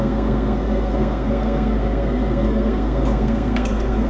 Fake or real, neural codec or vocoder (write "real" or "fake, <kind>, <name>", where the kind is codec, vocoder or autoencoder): fake, codec, SNAC